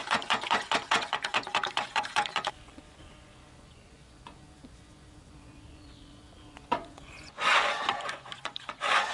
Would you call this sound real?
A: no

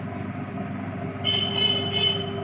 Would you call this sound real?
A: yes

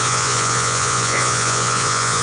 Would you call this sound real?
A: no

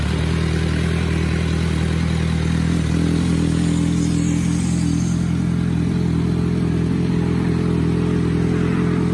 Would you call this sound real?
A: yes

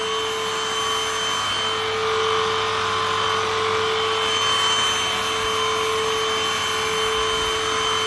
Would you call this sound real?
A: yes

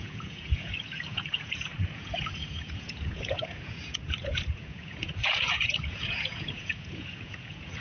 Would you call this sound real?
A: no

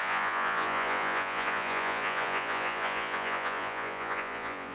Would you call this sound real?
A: no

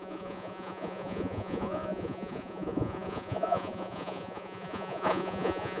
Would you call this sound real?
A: no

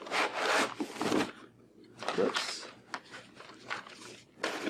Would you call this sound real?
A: yes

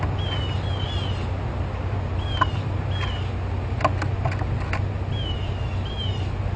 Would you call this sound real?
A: yes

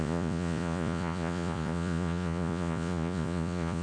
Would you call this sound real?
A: no